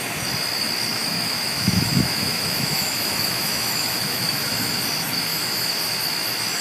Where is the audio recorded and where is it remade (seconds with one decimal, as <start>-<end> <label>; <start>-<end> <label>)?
0.0-1.0 recorded; 1.0-4.5 remade; 4.5-5.3 recorded; 5.3-6.0 remade; 6.0-6.6 recorded